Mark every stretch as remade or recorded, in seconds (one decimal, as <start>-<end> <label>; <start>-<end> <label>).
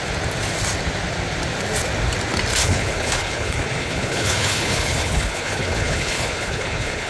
0.0-2.6 recorded; 2.6-7.1 remade